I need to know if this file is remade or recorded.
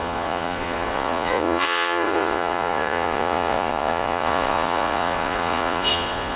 remade